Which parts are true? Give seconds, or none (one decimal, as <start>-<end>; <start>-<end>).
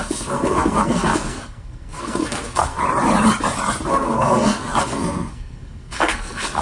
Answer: 2.8-3.9